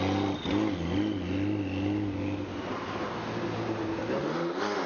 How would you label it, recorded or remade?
recorded